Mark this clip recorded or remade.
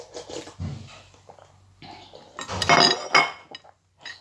recorded